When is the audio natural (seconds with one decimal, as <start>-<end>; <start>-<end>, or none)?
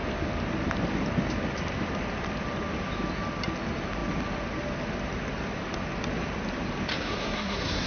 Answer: 0.0-6.9